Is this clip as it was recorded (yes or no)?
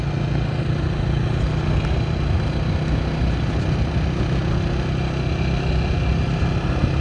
yes